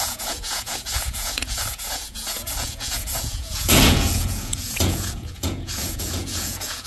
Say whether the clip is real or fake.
fake